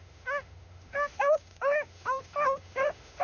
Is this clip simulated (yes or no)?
yes